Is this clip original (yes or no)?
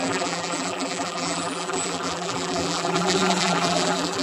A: no